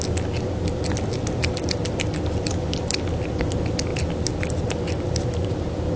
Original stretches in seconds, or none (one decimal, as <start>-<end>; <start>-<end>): 0.0-6.0

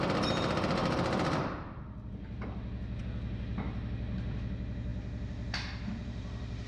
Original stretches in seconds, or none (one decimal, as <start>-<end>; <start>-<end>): 0.0-0.8; 3.0-4.9